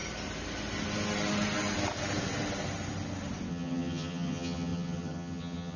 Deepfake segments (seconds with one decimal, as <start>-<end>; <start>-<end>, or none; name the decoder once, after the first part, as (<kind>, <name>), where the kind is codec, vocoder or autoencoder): 3.5-5.8 (vocoder, HiFi-GAN)